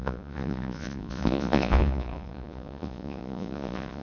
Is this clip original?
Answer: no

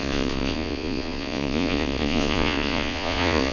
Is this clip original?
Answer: no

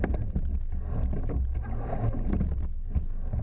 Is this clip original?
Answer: yes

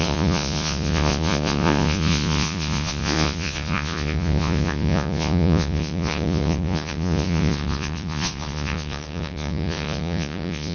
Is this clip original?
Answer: no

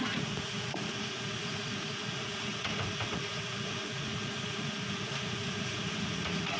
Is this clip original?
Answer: no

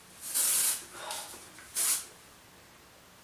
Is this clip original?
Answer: yes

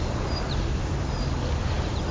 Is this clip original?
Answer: yes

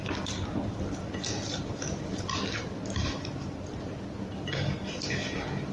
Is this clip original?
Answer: yes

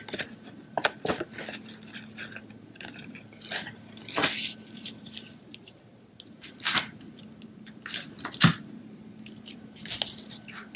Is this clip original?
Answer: yes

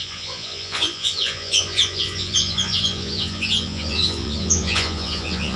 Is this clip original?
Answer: no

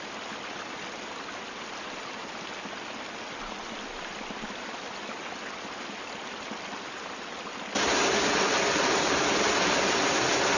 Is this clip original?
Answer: yes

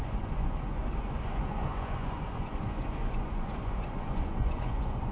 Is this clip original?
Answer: no